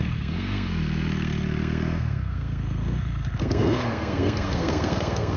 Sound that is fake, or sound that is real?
fake